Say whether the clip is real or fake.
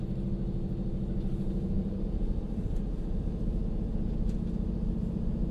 real